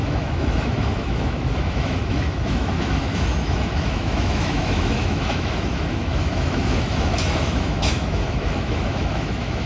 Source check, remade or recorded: remade